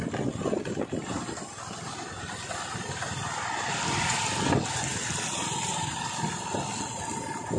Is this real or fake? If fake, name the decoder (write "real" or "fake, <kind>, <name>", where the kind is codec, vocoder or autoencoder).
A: real